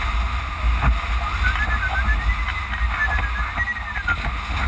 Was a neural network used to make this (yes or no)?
no